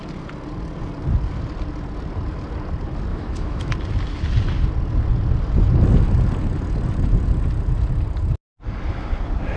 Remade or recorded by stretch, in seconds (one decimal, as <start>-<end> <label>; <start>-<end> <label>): 0.0-3.1 recorded; 3.1-3.7 remade; 3.7-9.6 recorded